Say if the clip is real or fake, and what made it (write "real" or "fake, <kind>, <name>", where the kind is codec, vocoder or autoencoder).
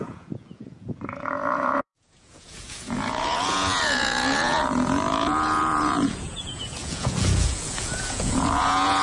fake, vocoder, Vocos